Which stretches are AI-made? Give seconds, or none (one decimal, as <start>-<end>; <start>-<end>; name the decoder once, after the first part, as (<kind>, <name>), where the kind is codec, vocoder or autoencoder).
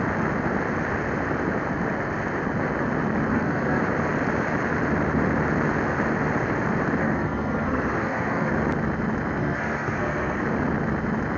3.3-3.8 (codec, SNAC); 7.0-8.5; 9.4-10.4